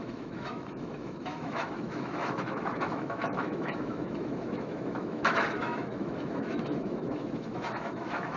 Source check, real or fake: fake